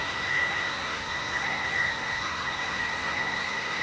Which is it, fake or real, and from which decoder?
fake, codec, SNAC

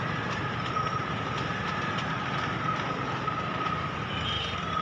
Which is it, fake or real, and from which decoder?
real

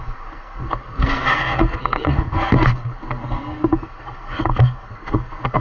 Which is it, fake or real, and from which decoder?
fake, codec, SNAC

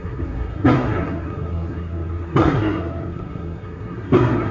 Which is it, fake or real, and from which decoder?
fake, codec, SNAC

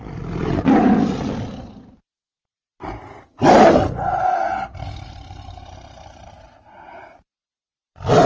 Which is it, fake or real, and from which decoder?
real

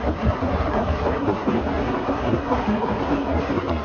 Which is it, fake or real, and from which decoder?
fake, codec, SNAC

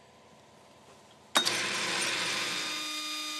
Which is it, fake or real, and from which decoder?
real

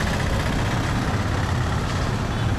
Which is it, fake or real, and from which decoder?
real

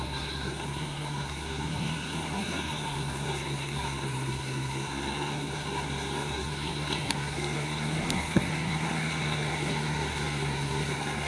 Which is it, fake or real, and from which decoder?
fake, codec, SNAC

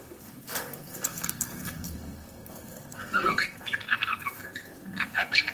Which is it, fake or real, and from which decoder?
fake, codec, SNAC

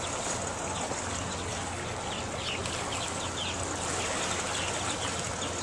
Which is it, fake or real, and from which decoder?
real